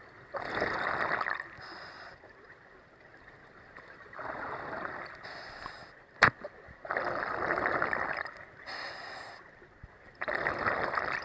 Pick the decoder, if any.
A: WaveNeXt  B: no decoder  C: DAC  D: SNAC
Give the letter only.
B